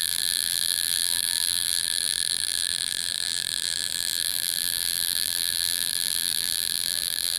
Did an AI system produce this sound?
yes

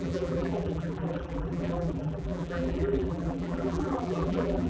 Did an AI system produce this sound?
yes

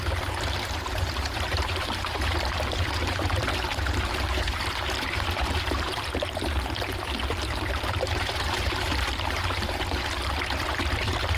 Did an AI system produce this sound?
yes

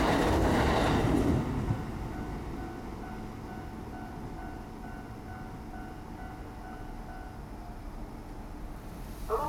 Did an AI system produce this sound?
no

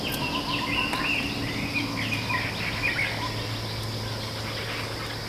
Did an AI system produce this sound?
no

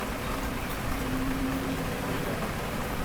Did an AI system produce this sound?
yes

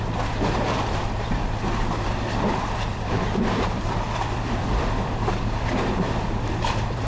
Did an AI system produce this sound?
yes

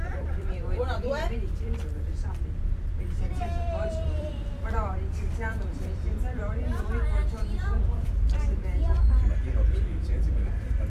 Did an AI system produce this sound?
yes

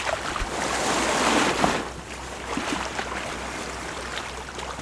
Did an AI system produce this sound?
no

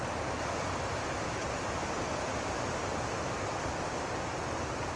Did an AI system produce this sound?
no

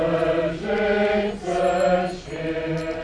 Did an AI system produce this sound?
no